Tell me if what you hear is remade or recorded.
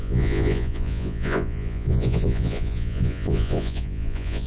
remade